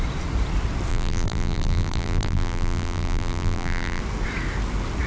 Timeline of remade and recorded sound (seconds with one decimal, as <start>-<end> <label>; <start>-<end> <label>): 0.0-0.9 recorded; 0.9-4.0 remade; 4.0-5.1 recorded